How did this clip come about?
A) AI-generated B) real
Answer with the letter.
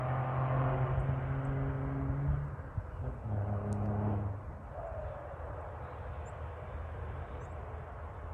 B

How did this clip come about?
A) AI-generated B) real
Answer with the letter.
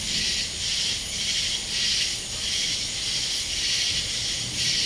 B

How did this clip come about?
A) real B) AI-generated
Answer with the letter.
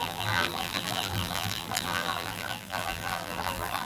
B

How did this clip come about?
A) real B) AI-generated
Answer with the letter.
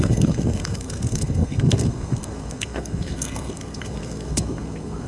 B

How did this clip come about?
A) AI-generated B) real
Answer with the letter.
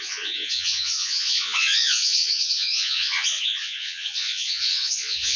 A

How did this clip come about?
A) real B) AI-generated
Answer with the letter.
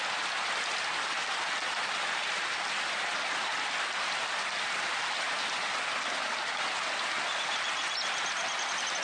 A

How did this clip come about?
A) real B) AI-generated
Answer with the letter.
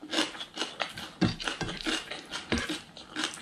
A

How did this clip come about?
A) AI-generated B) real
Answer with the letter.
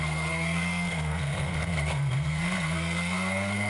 A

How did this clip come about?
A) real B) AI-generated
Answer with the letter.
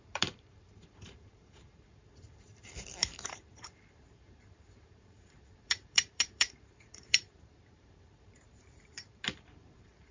B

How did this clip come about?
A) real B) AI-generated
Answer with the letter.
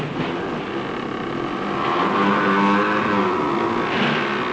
A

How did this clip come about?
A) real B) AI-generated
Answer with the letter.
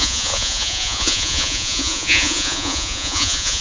B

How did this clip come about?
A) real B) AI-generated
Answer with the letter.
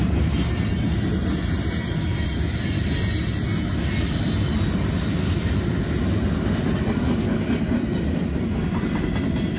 A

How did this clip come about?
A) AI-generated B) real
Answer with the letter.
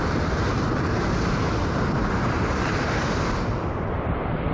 A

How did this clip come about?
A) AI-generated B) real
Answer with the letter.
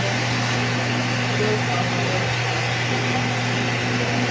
B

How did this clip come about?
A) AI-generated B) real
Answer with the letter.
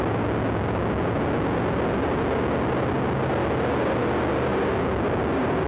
B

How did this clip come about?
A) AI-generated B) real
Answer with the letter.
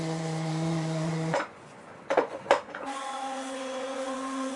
A